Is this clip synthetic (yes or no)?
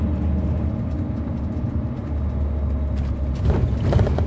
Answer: no